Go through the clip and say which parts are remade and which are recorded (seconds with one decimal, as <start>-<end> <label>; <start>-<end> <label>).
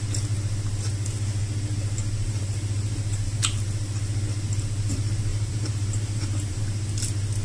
0.0-2.2 recorded; 2.2-3.4 remade; 3.4-5.3 recorded; 5.3-6.6 remade; 6.6-7.4 recorded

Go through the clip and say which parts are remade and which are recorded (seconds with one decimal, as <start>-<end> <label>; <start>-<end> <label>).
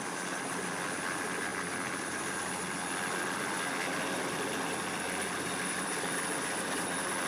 0.0-7.3 recorded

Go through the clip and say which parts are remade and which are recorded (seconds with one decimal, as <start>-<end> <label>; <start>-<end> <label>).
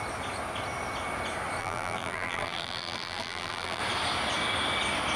0.0-1.6 recorded; 1.6-3.8 remade; 3.8-5.2 recorded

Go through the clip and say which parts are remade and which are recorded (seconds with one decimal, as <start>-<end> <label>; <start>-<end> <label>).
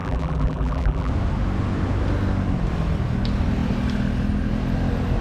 0.0-1.1 remade; 1.1-5.2 recorded